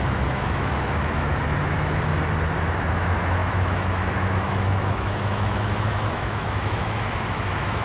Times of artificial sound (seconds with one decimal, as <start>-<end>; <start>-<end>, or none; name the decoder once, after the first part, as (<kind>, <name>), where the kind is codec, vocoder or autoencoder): 0.0-2.1 (autoencoder, DAC-VAE); 2.9-7.8